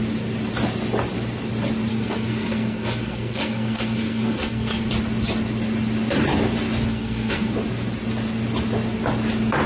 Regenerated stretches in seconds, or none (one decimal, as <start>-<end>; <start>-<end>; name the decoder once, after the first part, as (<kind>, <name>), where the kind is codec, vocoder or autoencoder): 1.9-4.9 (codec, SNAC); 6.9-7.5